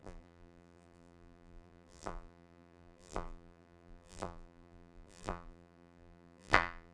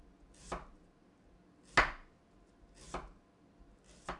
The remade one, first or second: first